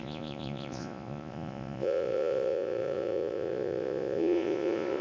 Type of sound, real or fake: fake